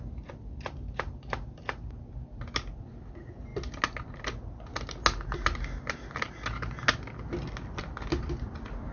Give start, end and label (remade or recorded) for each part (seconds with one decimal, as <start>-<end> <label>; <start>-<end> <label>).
0.0-8.9 recorded